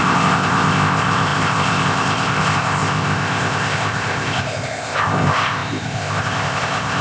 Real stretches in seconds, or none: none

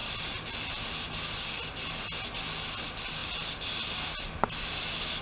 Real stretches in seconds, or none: 0.0-5.2

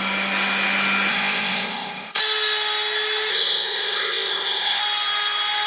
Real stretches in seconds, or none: 0.0-1.1; 2.2-3.3; 4.8-5.7